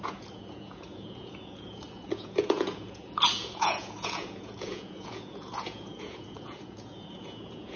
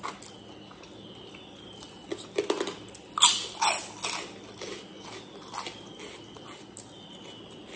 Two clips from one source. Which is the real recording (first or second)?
second